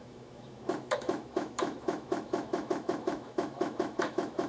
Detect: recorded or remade remade